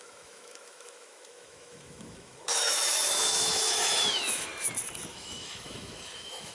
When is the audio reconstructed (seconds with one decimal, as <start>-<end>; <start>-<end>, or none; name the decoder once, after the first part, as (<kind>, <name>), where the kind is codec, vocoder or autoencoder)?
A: 0.0-4.5 (autoencoder, DAC-VAE); 5.1-6.5